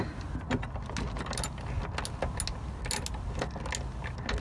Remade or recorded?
recorded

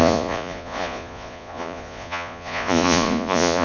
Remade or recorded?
remade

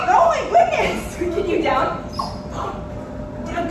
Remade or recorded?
recorded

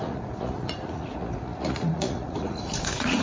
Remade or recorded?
remade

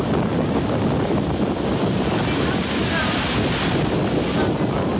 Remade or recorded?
recorded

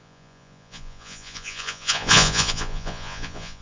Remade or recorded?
remade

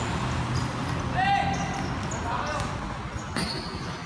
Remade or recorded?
recorded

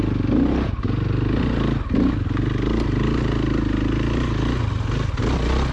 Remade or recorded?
recorded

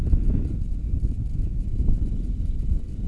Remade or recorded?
recorded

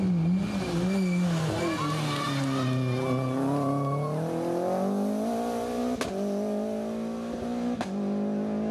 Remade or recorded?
recorded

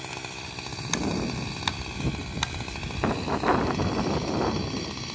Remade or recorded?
recorded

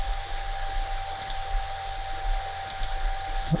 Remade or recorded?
recorded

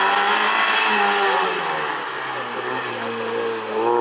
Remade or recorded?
recorded